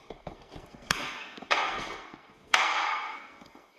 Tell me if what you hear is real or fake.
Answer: fake